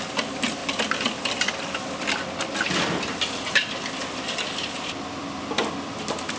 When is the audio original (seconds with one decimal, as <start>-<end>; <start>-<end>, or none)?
0.0-6.4